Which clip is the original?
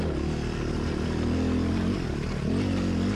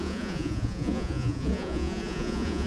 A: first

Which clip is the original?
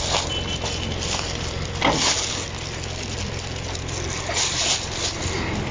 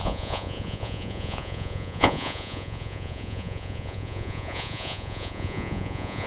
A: first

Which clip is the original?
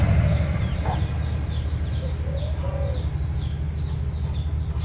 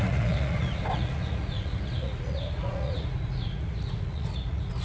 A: first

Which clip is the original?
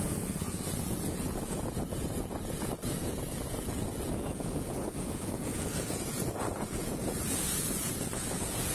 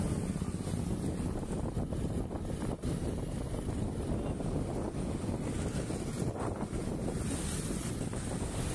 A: second